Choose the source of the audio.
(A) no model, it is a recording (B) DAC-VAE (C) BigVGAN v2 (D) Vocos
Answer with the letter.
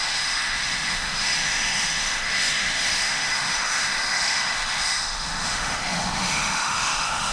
B